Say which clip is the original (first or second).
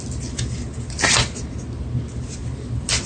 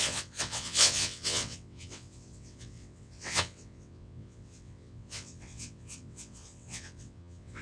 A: first